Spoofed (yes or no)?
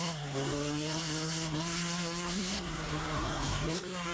yes